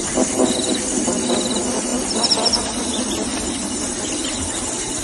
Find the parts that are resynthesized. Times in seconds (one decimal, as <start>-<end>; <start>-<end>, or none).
1.9-3.9